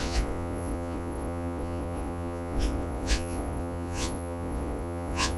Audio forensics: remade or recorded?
remade